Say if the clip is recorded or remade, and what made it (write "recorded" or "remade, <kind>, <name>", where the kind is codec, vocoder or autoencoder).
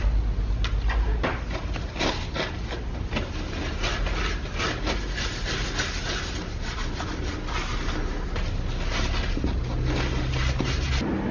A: recorded